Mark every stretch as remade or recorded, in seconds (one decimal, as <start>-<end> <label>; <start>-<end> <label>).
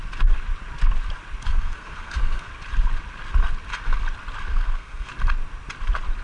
0.0-1.5 recorded; 1.5-2.5 remade; 2.5-4.5 recorded; 4.5-5.1 remade; 5.1-6.2 recorded